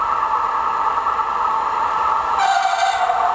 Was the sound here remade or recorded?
recorded